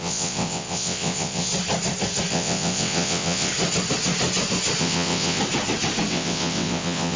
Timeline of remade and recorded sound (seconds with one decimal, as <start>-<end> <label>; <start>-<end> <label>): 0.0-1.5 remade; 1.5-2.3 recorded; 2.3-3.5 remade; 3.5-4.8 recorded; 4.8-5.4 remade; 5.4-6.1 recorded; 6.1-7.2 remade